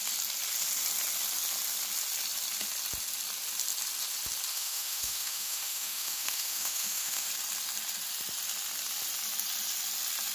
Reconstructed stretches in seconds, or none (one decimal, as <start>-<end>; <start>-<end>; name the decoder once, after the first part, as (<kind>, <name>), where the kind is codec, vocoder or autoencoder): 4.5-7.3 (autoencoder, DAC-VAE)